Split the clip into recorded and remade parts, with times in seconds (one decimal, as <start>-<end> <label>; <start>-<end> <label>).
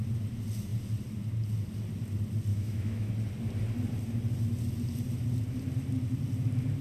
0.0-2.5 recorded; 2.5-3.1 remade; 3.1-6.8 recorded